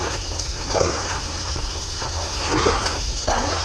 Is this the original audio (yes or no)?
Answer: no